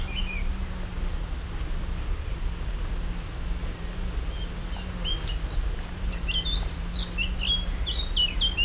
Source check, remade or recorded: recorded